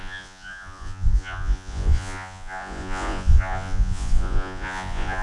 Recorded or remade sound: remade